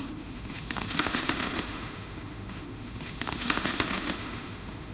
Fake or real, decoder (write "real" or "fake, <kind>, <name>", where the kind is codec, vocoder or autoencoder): fake, autoencoder, DAC-VAE